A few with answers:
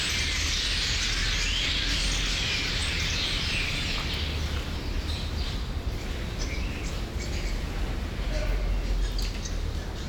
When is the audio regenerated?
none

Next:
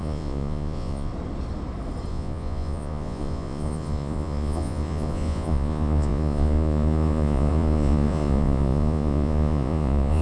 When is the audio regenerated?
0.0-1.1 (vocoder, Vocos); 2.1-10.2

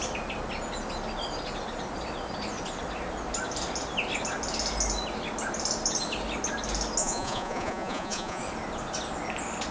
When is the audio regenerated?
7.0-8.4 (vocoder, Vocos)